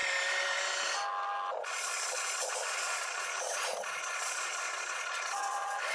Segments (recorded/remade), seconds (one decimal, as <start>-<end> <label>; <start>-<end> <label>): 0.0-1.6 recorded; 1.6-5.9 remade